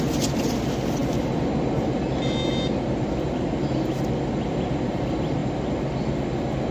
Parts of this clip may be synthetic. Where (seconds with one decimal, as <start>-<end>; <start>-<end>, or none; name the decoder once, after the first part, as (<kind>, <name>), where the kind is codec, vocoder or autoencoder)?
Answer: none